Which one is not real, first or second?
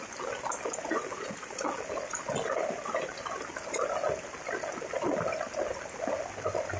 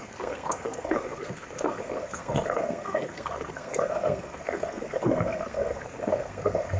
second